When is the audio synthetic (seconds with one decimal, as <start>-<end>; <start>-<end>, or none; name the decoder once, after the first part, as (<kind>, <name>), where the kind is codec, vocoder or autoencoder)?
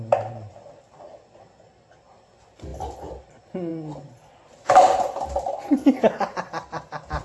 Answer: 0.0-7.2 (vocoder, BigVGAN v2)